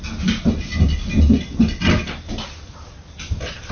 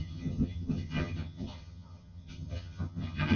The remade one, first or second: second